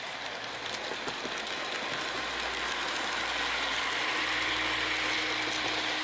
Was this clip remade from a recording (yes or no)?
no